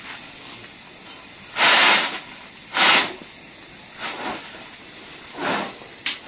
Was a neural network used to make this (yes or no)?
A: no